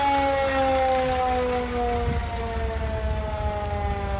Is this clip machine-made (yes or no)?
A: no